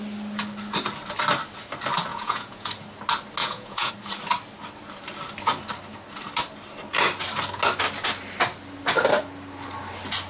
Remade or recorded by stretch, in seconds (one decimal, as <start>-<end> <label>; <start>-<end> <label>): 0.0-2.1 recorded; 2.1-2.7 remade; 2.7-3.4 recorded; 3.4-3.9 remade; 3.9-10.3 recorded